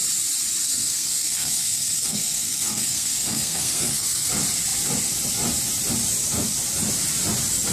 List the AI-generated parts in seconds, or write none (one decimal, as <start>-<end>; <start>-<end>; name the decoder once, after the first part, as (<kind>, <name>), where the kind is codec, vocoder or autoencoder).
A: 0.6-4.3 (codec, SNAC)